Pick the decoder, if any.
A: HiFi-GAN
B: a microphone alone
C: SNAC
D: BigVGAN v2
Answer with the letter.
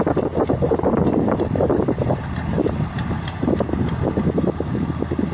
B